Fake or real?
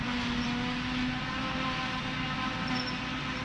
real